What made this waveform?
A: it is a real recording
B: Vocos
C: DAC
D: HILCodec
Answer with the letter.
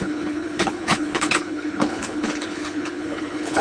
D